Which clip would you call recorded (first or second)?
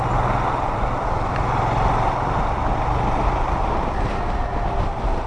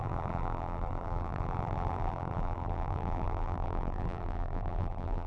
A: first